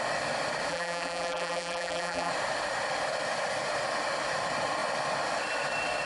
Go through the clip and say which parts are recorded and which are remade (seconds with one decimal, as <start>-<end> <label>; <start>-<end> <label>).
0.0-0.7 recorded; 0.7-2.3 remade; 2.3-6.1 recorded